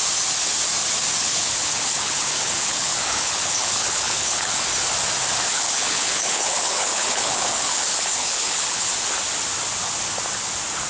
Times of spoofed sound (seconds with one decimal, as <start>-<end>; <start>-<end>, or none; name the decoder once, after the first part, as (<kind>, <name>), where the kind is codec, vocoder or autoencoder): 1.2-4.6 (codec, HILCodec); 5.5-8.9

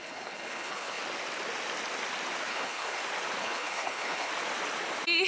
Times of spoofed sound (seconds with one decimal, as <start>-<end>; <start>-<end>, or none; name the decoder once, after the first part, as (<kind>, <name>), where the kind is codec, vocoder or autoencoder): 0.0-1.0 (codec, HILCodec); 2.5-3.0; 3.4-4.3